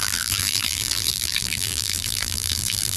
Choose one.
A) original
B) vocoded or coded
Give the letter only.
B